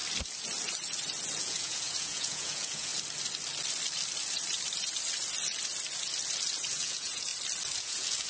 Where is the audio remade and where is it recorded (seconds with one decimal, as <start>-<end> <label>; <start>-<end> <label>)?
0.0-1.4 recorded; 1.4-2.9 remade; 2.9-6.7 recorded; 6.7-7.3 remade; 7.3-7.8 recorded; 7.8-8.3 remade

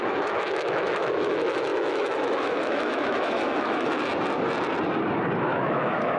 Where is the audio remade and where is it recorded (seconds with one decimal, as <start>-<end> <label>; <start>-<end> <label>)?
0.0-4.1 remade; 4.1-5.4 recorded; 5.4-6.2 remade

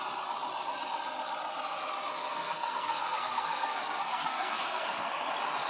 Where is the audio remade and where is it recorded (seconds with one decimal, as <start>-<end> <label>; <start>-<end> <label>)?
0.0-2.2 recorded; 2.2-5.3 remade; 5.3-5.7 recorded

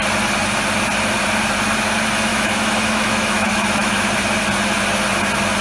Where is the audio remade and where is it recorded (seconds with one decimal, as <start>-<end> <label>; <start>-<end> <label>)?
0.0-2.3 recorded; 2.3-4.1 remade; 4.1-5.6 recorded